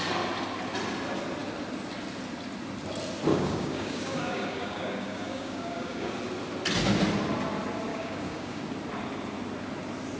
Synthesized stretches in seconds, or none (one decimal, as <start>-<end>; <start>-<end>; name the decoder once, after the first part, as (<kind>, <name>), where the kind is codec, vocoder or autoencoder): 3.3-6.1 (codec, DAC); 7.9-8.6